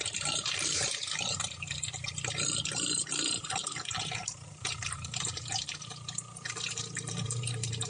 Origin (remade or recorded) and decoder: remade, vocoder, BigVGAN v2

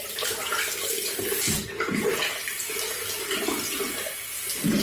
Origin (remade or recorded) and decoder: recorded